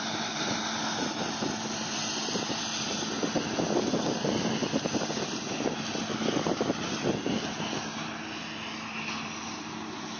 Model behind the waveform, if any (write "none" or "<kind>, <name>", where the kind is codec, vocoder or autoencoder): none